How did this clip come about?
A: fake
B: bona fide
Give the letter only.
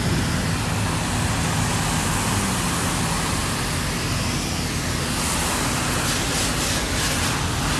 B